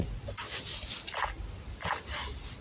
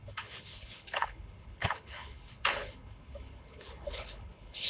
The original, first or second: first